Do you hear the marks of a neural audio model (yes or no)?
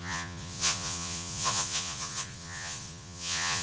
yes